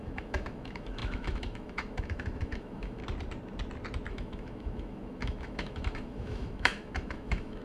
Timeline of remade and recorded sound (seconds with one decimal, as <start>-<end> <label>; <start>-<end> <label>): 0.0-3.0 remade; 3.0-4.1 recorded; 4.1-7.6 remade